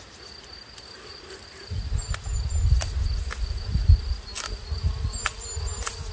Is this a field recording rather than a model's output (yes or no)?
yes